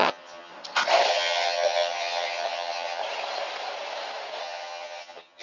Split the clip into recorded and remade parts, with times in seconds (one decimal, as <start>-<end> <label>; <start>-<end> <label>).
0.0-0.5 remade; 0.5-1.1 recorded; 1.1-3.0 remade; 3.0-4.4 recorded; 4.4-5.4 remade